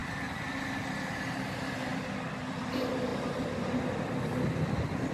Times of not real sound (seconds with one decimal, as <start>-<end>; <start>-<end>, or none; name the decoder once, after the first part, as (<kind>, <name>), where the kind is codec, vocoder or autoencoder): none